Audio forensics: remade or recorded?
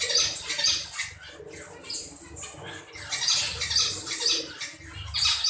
recorded